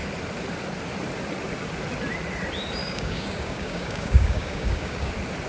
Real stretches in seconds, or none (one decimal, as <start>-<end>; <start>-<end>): 0.0-2.8; 5.1-5.5